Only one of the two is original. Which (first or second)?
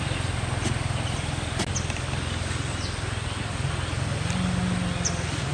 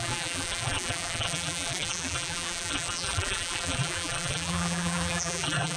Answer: first